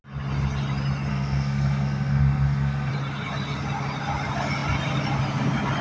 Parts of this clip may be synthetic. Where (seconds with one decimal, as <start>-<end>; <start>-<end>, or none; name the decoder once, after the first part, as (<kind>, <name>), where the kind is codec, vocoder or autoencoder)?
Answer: 1.1-2.9 (codec, SNAC)